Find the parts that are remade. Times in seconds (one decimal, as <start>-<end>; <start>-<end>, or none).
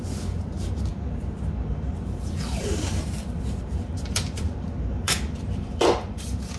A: 0.0-0.9; 1.7-6.6